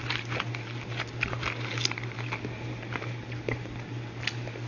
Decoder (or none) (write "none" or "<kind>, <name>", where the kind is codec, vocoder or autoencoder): none